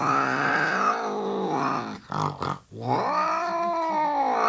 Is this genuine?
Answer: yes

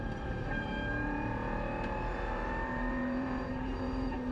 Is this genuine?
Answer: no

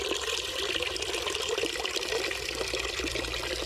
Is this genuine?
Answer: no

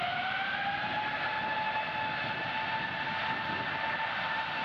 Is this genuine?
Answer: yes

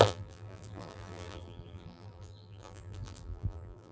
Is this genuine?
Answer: no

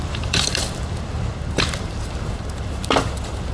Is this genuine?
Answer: no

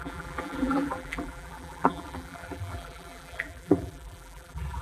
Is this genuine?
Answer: no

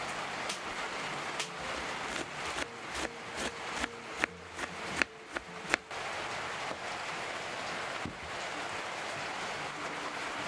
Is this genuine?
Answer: yes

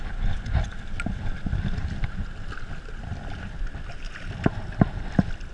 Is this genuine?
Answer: yes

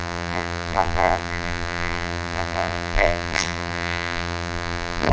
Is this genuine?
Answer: no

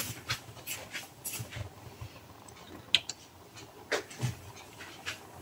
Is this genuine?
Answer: yes